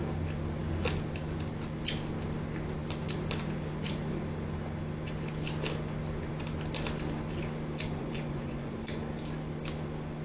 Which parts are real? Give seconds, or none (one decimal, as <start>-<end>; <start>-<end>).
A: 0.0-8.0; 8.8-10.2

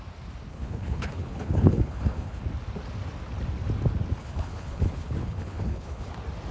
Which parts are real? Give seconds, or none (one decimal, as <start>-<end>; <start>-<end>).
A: 0.0-0.5; 2.4-4.2; 6.1-6.5

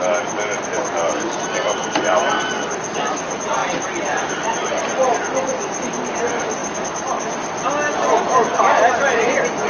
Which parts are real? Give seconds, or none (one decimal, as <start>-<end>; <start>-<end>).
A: 0.0-9.7

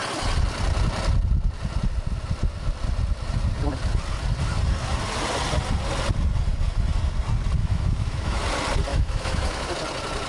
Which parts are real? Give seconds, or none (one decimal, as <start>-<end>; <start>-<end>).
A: 0.0-7.6; 8.4-8.9; 9.7-10.3